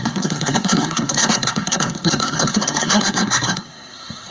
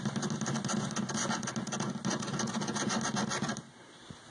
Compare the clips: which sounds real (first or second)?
second